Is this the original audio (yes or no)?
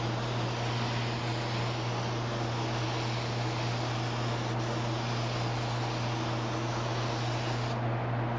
yes